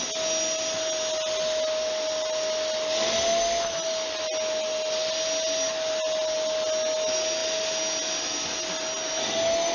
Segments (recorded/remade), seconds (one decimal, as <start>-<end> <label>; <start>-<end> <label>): 0.0-9.7 recorded